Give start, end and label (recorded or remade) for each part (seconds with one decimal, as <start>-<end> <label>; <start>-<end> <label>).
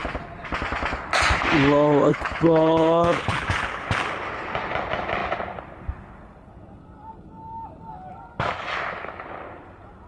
0.0-2.1 recorded; 2.1-3.9 remade; 3.9-10.1 recorded